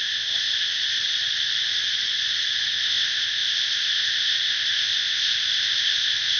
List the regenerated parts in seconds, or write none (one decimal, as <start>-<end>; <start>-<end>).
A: 0.0-0.8; 2.7-6.4

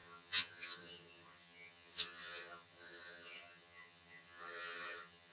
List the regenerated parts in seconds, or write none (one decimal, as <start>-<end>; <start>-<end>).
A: 0.0-5.3

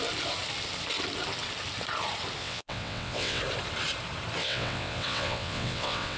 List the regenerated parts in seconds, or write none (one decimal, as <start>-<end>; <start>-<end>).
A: 2.4-3.4; 4.4-6.2

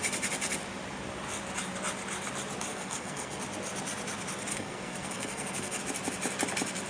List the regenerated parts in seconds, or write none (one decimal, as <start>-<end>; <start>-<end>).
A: 2.7-3.4; 4.5-5.8

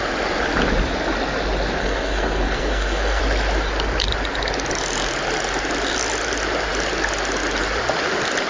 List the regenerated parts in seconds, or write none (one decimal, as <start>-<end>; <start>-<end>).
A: 1.8-3.2

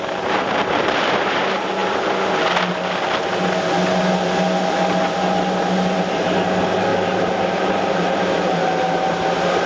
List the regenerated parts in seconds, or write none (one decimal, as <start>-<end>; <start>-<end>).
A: 6.9-9.1